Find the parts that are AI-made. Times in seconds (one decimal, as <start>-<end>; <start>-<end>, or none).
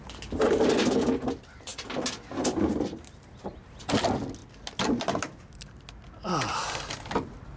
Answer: none